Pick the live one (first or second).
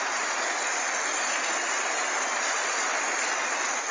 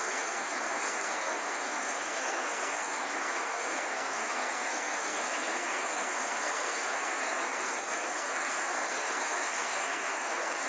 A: first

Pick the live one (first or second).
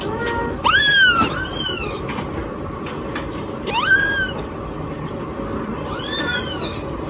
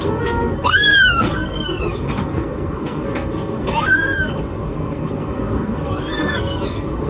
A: first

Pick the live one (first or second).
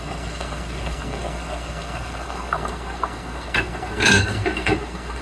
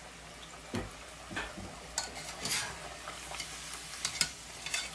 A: second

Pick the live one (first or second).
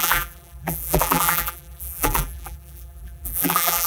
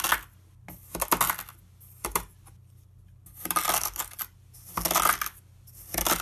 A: second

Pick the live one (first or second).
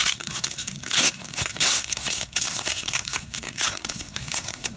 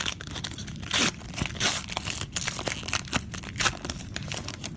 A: second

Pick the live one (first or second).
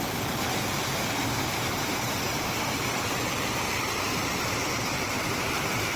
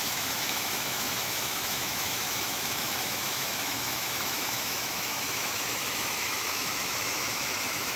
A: first